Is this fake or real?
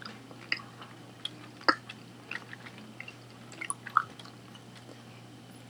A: real